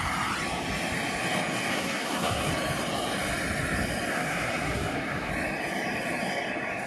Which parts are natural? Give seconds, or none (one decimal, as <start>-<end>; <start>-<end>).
0.0-1.7; 2.5-4.1; 5.3-6.9